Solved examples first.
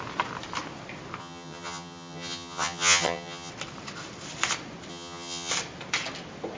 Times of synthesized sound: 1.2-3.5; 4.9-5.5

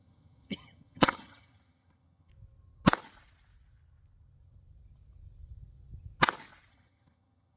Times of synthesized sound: 0.0-2.3; 6.7-7.6

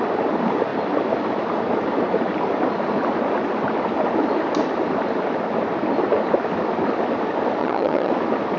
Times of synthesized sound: 7.6-8.1